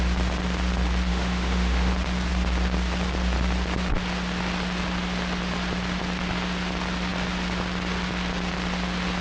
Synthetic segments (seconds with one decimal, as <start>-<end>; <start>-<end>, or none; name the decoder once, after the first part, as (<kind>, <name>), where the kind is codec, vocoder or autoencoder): 1.1-1.9 (autoencoder, DAC-VAE)